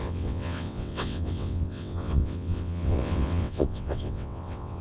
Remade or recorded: remade